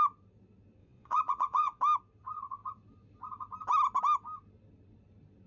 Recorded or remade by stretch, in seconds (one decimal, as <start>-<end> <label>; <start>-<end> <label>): 0.0-0.8 recorded; 0.8-1.8 remade; 1.8-5.5 recorded